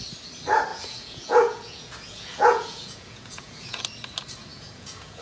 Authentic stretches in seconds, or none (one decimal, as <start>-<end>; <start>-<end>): 0.0-0.7; 3.8-4.5